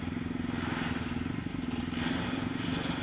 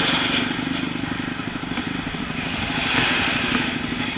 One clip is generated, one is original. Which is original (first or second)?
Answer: first